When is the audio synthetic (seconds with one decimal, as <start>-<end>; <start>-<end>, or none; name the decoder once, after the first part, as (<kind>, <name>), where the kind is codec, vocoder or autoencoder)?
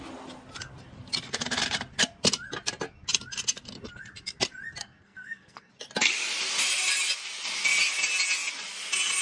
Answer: 4.8-5.7 (codec, SNAC)